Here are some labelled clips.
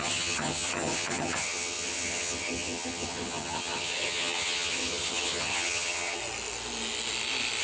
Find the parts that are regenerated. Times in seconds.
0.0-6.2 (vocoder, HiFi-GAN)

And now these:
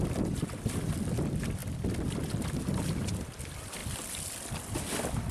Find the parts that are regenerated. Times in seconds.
none

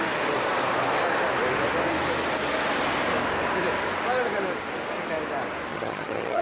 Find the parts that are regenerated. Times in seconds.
5.7-6.4 (vocoder, HiFi-GAN)

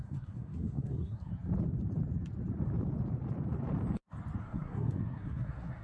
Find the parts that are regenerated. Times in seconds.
0.0-1.3 (codec, SNAC); 4.4-5.8

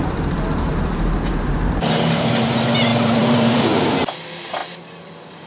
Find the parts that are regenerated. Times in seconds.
0.0-2.3 (vocoder, BigVGAN v2); 2.9-3.6